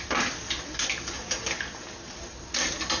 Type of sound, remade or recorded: recorded